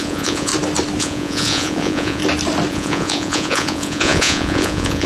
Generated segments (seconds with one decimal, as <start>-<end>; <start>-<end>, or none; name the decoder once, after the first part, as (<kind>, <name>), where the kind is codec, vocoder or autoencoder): 0.0-0.5 (vocoder, Vocos); 1.0-2.2; 2.7-5.1